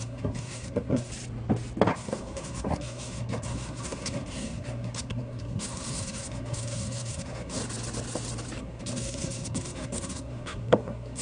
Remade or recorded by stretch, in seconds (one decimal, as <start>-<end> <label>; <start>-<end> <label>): 0.0-1.1 remade; 1.1-1.9 recorded; 1.9-7.6 remade; 7.6-8.6 recorded; 8.6-11.2 remade